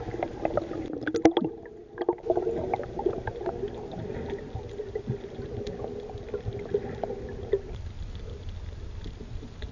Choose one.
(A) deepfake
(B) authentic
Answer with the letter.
B